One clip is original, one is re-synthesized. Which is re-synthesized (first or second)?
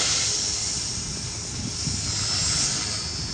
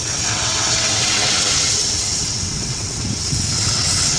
second